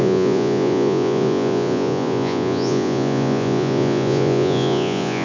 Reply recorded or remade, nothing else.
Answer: remade